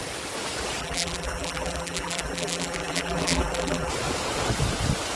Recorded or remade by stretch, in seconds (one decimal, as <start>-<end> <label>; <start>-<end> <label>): 0.0-0.8 recorded; 0.8-3.9 remade; 3.9-5.2 recorded